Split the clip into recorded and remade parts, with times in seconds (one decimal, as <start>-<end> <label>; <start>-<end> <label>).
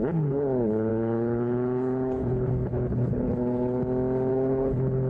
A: 0.0-3.8 remade; 3.8-4.3 recorded; 4.3-5.1 remade